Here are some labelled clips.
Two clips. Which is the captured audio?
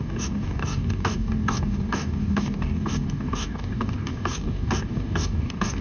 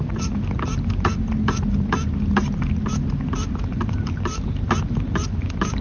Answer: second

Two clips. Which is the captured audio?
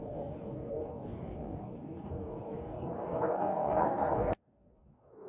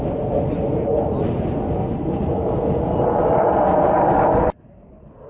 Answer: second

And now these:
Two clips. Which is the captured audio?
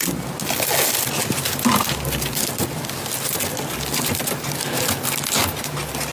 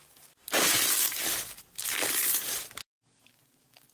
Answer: first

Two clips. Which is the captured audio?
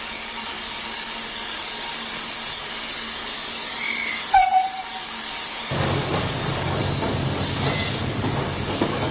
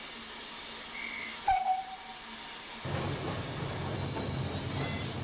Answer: second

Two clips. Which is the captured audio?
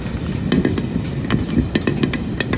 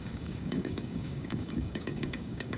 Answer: first